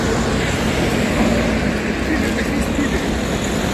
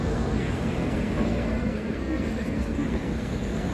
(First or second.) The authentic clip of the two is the first